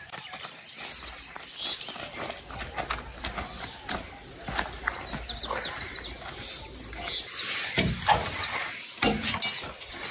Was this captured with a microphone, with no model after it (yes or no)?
yes